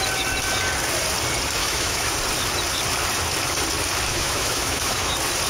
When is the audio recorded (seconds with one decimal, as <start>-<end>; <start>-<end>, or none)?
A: 0.0-1.6; 2.1-4.1; 5.1-5.5